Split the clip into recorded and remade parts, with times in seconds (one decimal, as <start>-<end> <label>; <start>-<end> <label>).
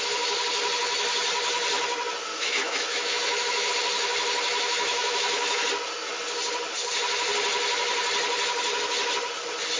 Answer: 0.0-2.3 recorded; 2.3-3.7 remade; 3.7-4.5 recorded; 4.5-5.6 remade; 5.6-9.8 recorded